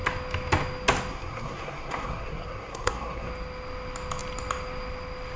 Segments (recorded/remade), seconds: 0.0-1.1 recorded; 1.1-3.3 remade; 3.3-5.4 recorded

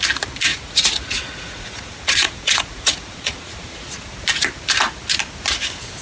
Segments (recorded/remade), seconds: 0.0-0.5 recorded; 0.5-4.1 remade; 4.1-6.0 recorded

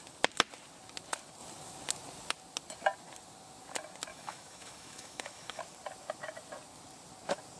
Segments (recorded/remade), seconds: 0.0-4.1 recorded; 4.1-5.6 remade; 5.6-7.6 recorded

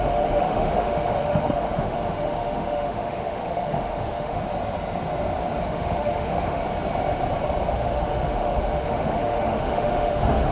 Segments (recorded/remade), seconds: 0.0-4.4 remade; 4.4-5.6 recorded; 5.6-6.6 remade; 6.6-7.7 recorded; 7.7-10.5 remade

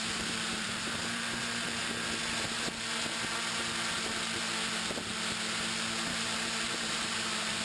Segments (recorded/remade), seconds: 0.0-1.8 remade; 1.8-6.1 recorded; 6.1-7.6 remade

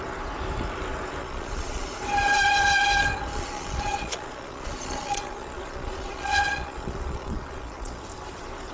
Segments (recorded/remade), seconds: 0.0-1.2 recorded; 1.2-2.0 remade; 2.0-3.3 recorded; 3.3-8.0 remade; 8.0-8.7 recorded

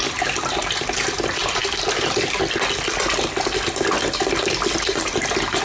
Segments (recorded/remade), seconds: 0.0-5.6 recorded

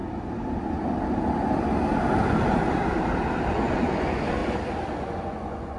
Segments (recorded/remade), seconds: 0.0-3.5 recorded; 3.5-4.4 remade; 4.4-5.0 recorded; 5.0-5.8 remade